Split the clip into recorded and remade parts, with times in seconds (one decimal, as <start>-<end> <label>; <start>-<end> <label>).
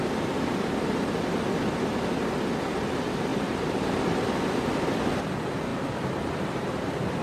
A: 0.0-3.3 recorded; 3.3-4.4 remade; 4.4-5.7 recorded; 5.7-6.8 remade; 6.8-7.2 recorded